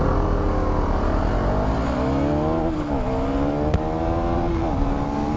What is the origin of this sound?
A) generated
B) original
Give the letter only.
B